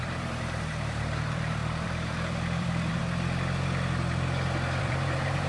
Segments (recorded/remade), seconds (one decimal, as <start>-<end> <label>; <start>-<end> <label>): 0.0-3.0 remade; 3.0-4.8 recorded; 4.8-5.5 remade